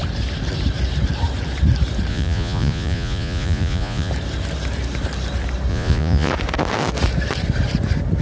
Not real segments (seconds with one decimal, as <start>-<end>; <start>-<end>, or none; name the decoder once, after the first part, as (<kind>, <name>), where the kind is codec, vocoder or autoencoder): 2.1-4.1 (vocoder, Vocos); 5.7-6.3